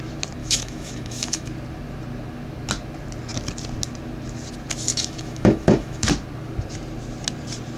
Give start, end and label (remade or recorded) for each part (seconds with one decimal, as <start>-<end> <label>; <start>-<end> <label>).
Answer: 0.0-0.4 recorded; 0.4-1.5 remade; 1.5-4.9 recorded; 4.9-6.1 remade; 6.1-7.8 recorded